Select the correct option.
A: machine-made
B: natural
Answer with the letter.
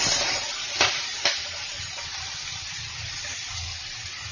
B